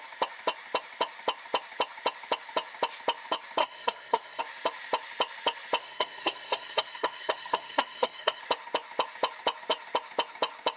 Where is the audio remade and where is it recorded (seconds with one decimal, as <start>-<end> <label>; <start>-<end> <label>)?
0.0-3.6 recorded; 3.6-4.4 remade; 4.4-5.8 recorded; 5.8-8.4 remade; 8.4-10.8 recorded